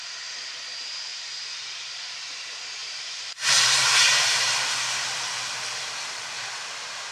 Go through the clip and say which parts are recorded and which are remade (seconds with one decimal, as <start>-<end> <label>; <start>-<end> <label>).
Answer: 0.0-1.1 recorded; 1.1-2.0 remade; 2.0-2.8 recorded; 2.8-4.5 remade; 4.5-7.1 recorded